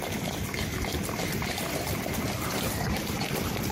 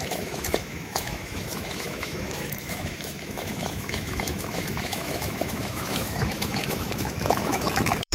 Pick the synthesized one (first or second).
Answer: second